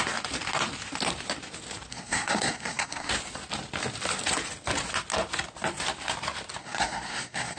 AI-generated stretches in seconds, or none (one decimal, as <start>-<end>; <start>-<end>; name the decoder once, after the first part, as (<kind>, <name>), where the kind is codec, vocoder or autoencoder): 1.9-3.1 (codec, SNAC); 6.6-7.6